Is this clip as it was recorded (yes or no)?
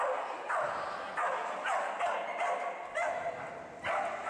yes